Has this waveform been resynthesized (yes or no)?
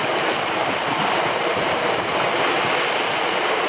no